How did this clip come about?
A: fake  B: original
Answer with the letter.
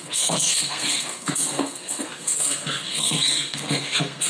A